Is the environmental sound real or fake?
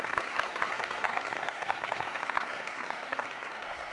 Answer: fake